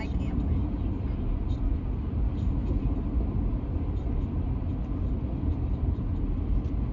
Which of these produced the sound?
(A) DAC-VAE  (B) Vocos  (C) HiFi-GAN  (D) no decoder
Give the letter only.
D